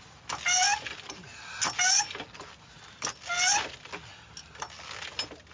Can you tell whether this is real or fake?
real